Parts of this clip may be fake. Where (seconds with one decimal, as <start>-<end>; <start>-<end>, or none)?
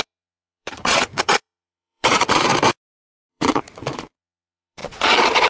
0.0-2.5; 3.3-5.5